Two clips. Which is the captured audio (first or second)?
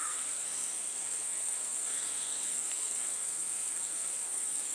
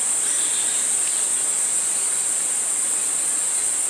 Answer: second